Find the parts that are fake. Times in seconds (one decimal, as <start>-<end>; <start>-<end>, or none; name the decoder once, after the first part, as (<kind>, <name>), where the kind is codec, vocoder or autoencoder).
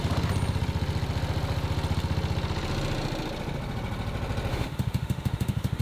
4.5-5.8 (autoencoder, DAC-VAE)